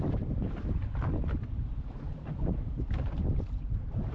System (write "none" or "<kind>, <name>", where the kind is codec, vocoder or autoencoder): vocoder, BigVGAN v2